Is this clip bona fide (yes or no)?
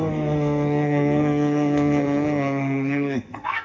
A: no